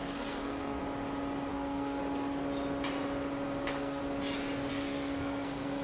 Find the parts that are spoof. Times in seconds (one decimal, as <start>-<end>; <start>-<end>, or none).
0.0-0.8; 1.5-2.0; 3.6-4.0; 4.7-5.8